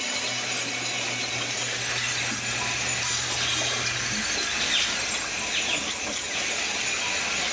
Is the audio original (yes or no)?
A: yes